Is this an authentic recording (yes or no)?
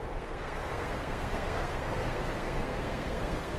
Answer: no